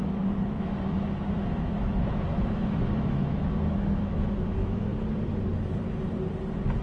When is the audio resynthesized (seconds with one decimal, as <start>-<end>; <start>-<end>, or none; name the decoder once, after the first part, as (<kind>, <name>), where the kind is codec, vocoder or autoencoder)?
0.0-4.9 (autoencoder, DAC-VAE)